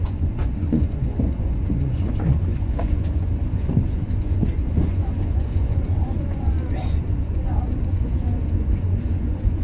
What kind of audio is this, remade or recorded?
remade